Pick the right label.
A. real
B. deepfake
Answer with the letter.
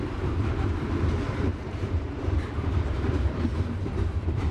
B